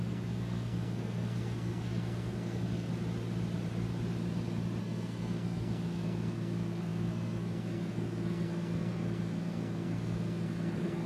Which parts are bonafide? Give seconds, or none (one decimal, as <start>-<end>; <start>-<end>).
2.9-4.8